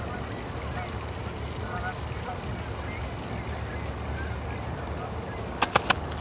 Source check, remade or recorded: recorded